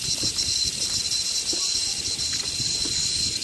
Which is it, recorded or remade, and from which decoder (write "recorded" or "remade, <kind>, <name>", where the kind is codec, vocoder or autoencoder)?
recorded